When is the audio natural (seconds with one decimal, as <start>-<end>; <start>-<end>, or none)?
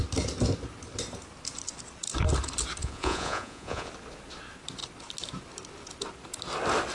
0.0-2.8; 3.9-6.9